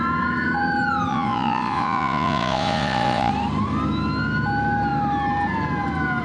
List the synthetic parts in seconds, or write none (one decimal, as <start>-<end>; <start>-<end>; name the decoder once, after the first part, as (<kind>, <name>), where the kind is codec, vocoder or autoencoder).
1.1-3.3 (vocoder, Vocos)